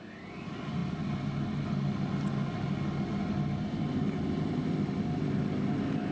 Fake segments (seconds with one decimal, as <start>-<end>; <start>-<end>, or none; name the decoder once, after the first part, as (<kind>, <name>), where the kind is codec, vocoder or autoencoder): none